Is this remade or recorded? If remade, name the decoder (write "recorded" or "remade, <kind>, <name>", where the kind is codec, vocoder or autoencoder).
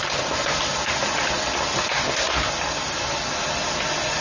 recorded